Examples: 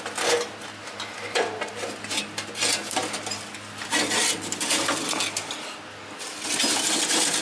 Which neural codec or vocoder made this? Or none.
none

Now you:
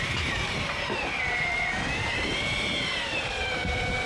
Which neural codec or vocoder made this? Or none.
vocoder, BigVGAN v2